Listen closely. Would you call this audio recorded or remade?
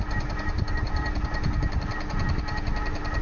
recorded